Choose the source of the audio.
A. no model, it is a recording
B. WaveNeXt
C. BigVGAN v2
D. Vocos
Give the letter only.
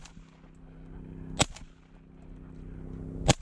A